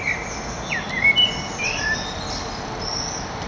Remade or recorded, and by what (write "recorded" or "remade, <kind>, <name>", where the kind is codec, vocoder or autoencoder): recorded